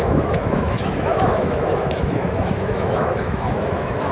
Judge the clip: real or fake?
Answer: fake